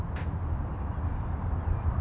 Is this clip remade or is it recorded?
recorded